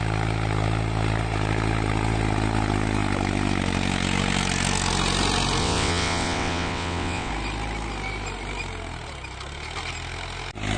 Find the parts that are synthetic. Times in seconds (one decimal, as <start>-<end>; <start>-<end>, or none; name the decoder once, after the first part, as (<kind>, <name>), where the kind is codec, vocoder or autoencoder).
5.6-7.3 (vocoder, WaveNeXt)